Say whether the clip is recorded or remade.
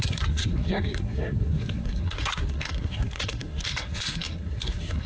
remade